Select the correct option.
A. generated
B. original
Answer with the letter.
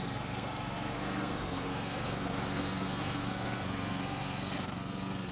A